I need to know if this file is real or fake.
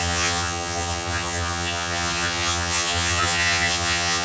fake